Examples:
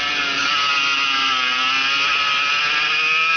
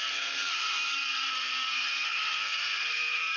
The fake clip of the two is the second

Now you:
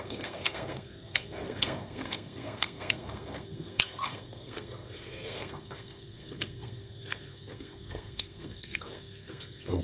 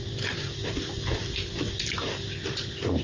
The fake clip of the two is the first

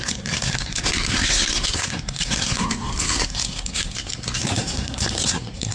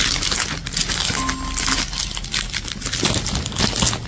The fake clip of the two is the first